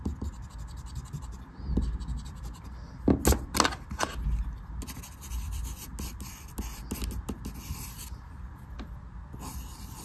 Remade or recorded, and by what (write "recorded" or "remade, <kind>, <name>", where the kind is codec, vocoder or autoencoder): recorded